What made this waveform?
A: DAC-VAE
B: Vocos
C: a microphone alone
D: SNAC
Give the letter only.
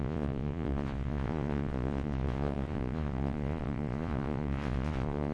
B